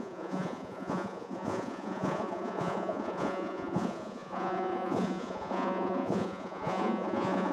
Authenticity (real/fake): fake